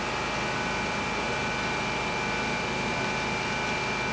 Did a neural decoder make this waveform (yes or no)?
no